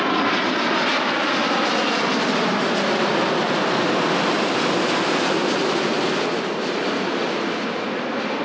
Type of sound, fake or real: real